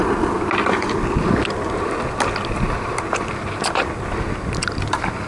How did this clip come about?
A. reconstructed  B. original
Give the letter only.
B